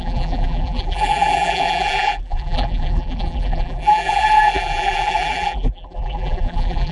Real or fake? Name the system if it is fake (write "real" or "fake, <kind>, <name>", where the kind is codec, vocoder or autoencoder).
fake, vocoder, BigVGAN v2